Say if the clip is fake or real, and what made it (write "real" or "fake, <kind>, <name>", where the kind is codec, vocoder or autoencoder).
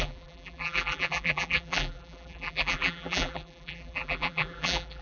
fake, vocoder, BigVGAN v2